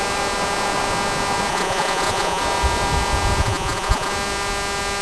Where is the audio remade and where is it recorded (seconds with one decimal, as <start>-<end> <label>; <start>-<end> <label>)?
0.0-1.5 recorded; 1.5-2.4 remade; 2.4-3.4 recorded; 3.4-4.1 remade; 4.1-5.0 recorded